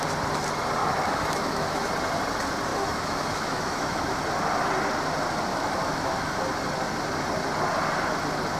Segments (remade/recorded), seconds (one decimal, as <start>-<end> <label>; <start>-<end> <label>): 0.0-0.8 recorded; 0.8-1.9 remade; 1.9-2.7 recorded; 2.7-4.2 remade; 4.2-5.5 recorded; 5.5-6.4 remade; 6.4-8.6 recorded